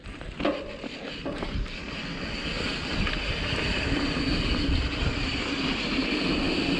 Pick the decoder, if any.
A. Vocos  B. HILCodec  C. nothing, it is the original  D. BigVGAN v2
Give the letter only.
C